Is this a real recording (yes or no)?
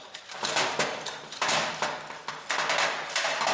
yes